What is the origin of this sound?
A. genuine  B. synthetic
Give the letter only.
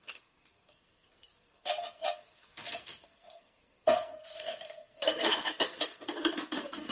B